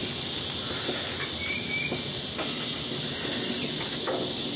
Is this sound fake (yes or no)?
no